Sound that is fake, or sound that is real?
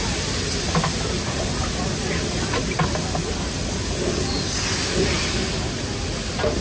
real